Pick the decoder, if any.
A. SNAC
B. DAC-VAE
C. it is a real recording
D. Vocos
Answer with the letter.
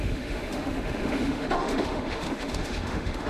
B